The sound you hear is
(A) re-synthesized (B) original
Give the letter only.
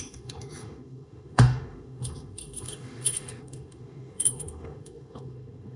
A